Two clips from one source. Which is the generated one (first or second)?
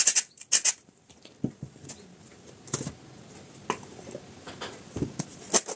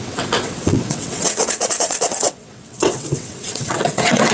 second